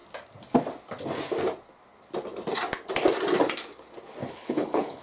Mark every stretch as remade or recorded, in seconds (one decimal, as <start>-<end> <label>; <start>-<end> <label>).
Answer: 0.0-4.2 recorded; 4.2-5.0 remade